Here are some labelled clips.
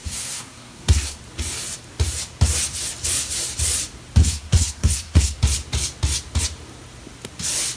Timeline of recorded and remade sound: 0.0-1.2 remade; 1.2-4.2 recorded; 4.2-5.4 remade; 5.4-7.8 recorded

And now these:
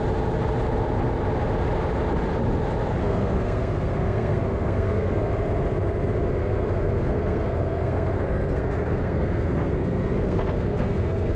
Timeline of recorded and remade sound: 0.0-3.0 recorded; 3.0-5.3 remade; 5.3-6.4 recorded; 6.4-11.4 remade

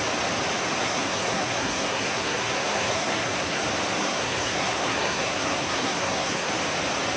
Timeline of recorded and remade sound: 0.0-0.8 recorded; 0.8-3.6 remade; 3.6-4.0 recorded; 4.0-6.5 remade; 6.5-7.2 recorded

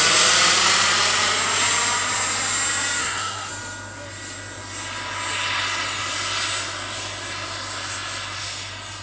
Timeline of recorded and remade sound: 0.0-3.0 recorded; 3.0-3.5 remade; 3.5-9.0 recorded

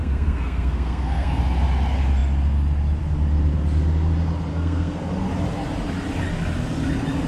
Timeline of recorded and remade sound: 0.0-1.4 remade; 1.4-4.5 recorded; 4.5-5.1 remade; 5.1-7.3 recorded

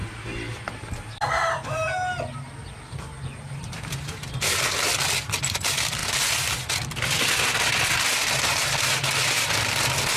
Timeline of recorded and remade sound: 0.0-10.2 recorded